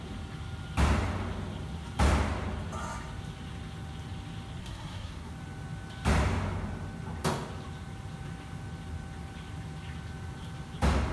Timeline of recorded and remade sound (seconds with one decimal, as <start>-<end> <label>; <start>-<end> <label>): 0.0-4.6 recorded; 4.6-5.3 remade; 5.3-11.1 recorded